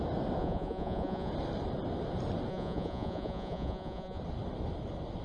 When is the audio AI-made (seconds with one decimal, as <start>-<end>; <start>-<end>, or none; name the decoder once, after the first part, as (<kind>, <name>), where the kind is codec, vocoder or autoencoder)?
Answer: 0.4-1.3 (vocoder, Vocos); 2.5-4.2